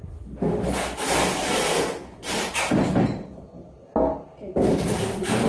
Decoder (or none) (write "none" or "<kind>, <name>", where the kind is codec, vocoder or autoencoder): none